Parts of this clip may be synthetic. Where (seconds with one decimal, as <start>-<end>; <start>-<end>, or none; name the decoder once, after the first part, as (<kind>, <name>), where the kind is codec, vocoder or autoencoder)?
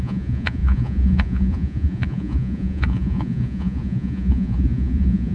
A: 0.0-5.3 (vocoder, Vocos)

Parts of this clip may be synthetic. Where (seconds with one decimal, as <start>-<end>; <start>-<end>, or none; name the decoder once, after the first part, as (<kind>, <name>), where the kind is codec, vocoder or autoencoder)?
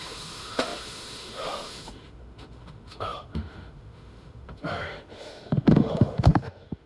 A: 0.0-6.9 (autoencoder, DAC-VAE)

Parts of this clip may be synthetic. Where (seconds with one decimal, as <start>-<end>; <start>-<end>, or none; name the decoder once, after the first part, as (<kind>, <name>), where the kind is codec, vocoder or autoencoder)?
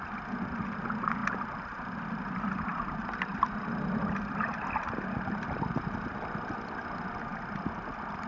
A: none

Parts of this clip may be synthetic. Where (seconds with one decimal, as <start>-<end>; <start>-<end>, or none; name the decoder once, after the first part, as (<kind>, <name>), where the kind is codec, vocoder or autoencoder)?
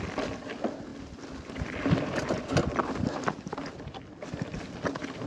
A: none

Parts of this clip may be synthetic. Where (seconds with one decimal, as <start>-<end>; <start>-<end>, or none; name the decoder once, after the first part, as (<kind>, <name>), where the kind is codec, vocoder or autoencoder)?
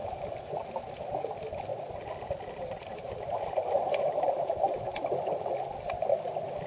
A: 0.0-0.7 (vocoder, BigVGAN v2); 1.7-4.8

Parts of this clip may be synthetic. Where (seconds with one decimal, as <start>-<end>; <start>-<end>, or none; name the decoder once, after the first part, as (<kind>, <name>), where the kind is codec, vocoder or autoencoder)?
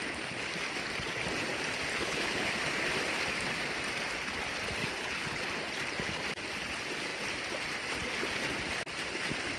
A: 1.9-2.5 (codec, HILCodec); 4.8-5.4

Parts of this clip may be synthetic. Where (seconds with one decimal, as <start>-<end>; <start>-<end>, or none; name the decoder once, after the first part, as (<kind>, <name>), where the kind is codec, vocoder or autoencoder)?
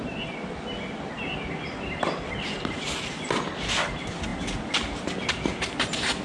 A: none